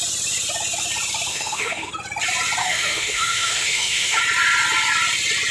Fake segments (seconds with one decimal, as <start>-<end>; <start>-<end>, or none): 1.3-1.9; 2.6-4.2